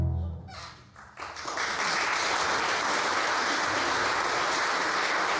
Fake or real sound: real